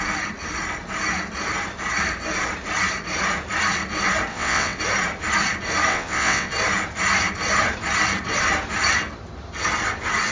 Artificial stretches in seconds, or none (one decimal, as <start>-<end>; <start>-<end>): 4.3-4.8; 5.9-6.5